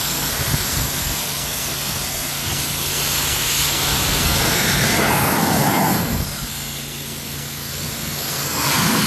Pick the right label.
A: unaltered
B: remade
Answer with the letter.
B